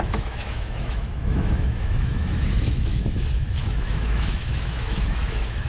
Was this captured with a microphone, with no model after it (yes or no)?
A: no